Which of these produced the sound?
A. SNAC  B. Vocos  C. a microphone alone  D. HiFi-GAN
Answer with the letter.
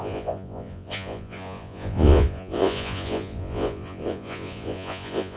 B